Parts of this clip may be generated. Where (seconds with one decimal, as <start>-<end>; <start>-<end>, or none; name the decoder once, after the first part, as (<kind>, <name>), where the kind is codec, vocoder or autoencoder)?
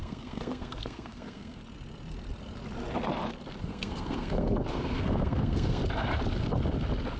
0.0-1.6 (codec, SNAC); 3.6-5.8